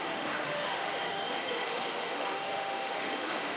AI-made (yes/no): yes